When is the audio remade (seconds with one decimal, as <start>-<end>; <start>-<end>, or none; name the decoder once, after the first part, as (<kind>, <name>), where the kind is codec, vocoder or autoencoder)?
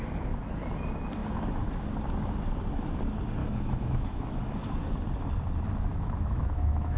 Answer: 3.4-4.5 (autoencoder, DAC-VAE); 5.9-7.0